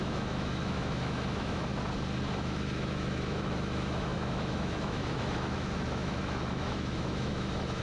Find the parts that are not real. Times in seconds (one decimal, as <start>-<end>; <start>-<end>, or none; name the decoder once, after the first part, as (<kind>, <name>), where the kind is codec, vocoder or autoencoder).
0.0-1.7 (autoencoder, DAC-VAE); 2.4-7.8